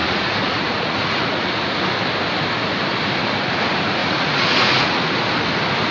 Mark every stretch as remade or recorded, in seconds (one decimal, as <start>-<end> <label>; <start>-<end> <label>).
0.0-1.8 remade; 1.8-4.0 recorded; 4.0-5.1 remade; 5.1-5.9 recorded

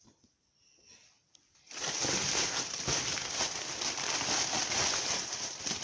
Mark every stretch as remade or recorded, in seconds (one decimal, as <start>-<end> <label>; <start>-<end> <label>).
0.0-1.0 recorded; 1.0-4.5 remade; 4.5-5.8 recorded

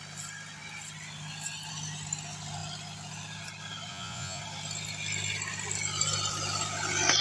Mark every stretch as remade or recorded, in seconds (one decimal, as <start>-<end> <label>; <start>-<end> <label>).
0.0-3.9 recorded; 3.9-4.4 remade; 4.4-7.2 recorded

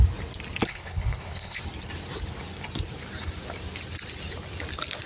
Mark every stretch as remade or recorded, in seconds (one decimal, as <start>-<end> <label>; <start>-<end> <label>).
0.0-0.6 recorded; 0.6-1.6 remade; 1.6-5.1 recorded